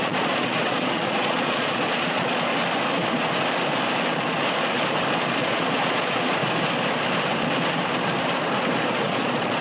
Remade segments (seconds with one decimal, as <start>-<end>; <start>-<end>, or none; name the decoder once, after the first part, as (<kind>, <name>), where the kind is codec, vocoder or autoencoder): 0.0-2.5 (vocoder, Vocos); 5.4-6.4; 8.9-9.6